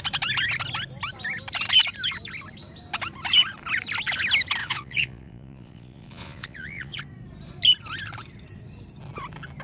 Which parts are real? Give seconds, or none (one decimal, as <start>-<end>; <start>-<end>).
0.0-4.6; 7.0-9.6